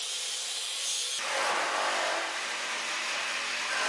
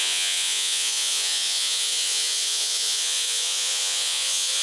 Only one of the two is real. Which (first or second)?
first